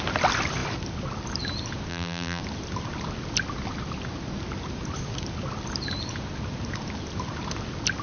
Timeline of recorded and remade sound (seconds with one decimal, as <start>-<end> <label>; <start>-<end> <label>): 0.0-1.9 recorded; 1.9-2.4 remade; 2.4-8.0 recorded